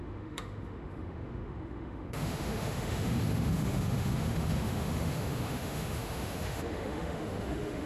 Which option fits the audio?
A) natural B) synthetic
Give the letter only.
B